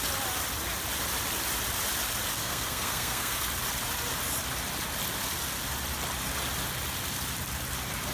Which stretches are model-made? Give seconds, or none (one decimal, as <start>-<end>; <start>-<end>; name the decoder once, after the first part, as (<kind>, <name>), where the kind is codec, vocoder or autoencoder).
2.4-3.4 (codec, SNAC)